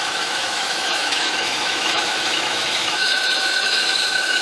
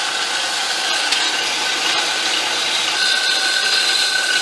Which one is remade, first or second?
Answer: first